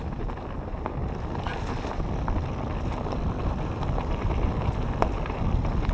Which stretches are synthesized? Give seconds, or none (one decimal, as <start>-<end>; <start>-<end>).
none